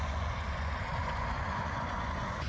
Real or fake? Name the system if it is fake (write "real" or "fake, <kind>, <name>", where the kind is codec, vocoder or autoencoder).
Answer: fake, vocoder, Vocos